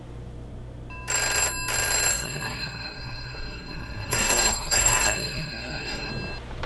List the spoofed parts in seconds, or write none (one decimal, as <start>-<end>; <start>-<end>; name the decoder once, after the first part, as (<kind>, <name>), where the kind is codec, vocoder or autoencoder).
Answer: 2.1-6.1 (codec, SNAC)